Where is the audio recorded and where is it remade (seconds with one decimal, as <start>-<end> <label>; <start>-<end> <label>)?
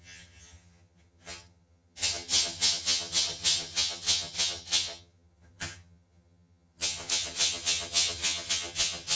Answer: 0.0-9.2 remade